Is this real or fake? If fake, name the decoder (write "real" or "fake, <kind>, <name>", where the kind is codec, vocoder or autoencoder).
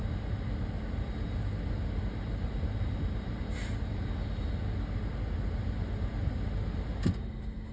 real